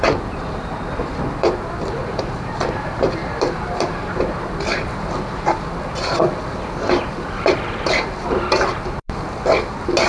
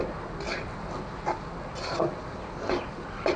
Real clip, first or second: second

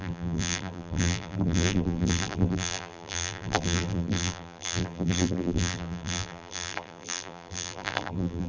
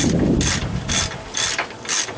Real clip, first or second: second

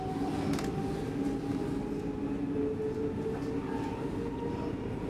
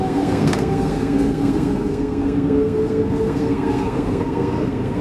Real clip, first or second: first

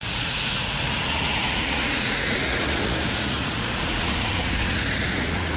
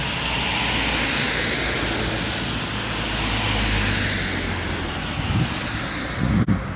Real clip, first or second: second